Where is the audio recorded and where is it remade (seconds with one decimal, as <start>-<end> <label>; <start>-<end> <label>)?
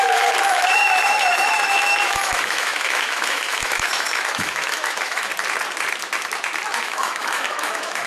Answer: 0.0-5.3 remade; 5.3-6.8 recorded; 6.8-8.1 remade